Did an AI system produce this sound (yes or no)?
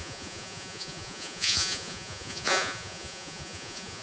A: yes